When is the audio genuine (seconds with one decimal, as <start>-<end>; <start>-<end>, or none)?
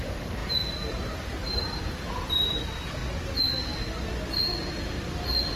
3.0-5.6